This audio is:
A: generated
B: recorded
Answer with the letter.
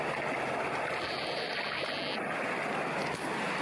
B